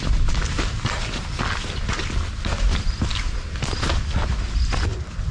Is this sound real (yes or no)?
yes